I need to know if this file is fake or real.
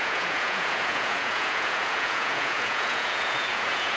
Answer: fake